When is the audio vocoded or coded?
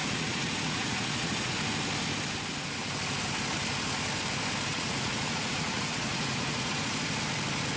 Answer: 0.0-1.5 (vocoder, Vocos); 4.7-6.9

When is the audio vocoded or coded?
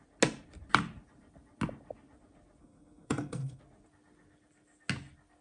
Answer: 2.6-3.6 (codec, SNAC)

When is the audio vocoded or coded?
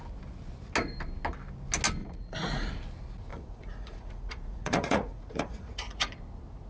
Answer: 2.0-2.7 (vocoder, Vocos); 3.3-6.1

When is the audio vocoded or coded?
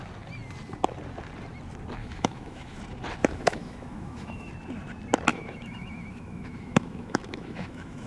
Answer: 2.0-2.8 (autoencoder, DAC-VAE); 3.2-4.5; 5.3-8.1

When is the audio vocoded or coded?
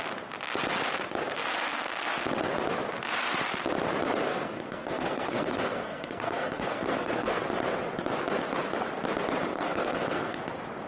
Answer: 4.3-7.4 (codec, SNAC); 9.5-10.4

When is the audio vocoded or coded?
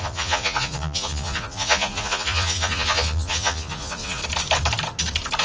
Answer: 0.0-4.2 (vocoder, Vocos)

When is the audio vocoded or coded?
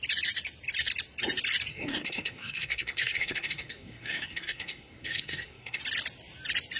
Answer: 1.7-5.8 (codec, SNAC)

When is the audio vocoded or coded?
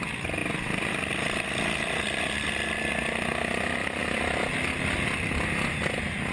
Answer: none